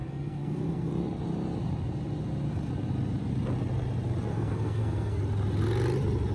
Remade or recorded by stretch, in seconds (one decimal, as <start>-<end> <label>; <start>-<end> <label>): 0.0-0.9 remade; 0.9-4.3 recorded; 4.3-5.2 remade; 5.2-6.3 recorded